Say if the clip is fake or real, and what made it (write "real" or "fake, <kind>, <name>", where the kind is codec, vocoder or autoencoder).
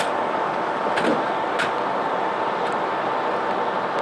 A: real